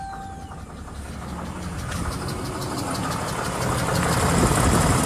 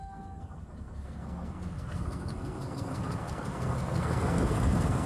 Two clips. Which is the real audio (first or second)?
first